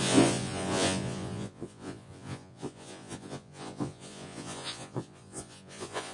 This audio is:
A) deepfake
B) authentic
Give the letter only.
A